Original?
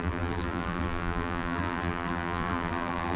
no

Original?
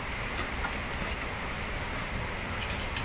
yes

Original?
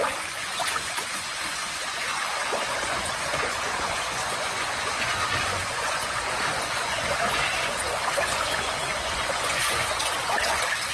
no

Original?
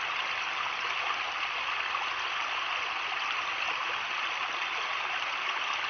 yes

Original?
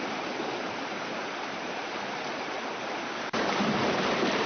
no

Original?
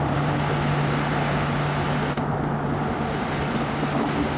yes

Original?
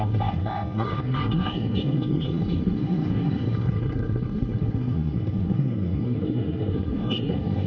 no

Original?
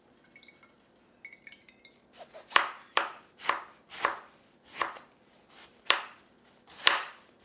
no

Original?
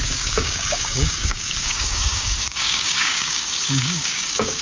no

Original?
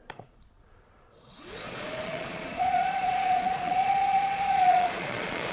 no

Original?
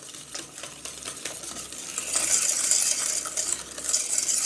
yes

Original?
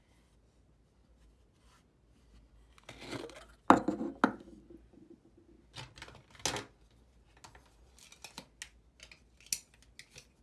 yes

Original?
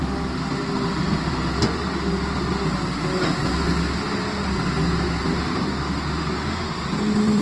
yes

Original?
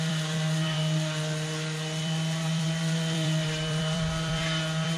no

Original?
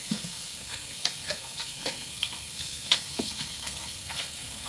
no